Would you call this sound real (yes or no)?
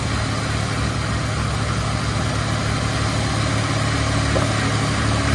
yes